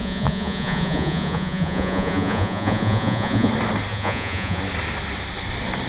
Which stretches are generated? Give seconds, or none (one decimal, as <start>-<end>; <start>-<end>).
0.0-3.5; 3.9-4.6